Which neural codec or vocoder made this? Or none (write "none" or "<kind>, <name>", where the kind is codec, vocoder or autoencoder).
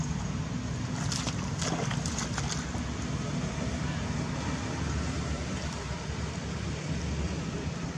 none